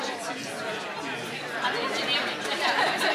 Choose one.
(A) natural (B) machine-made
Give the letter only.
A